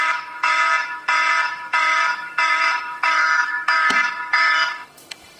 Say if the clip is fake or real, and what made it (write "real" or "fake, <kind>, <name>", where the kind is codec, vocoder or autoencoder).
fake, autoencoder, DAC-VAE